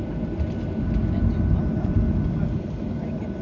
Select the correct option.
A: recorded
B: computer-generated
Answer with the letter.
A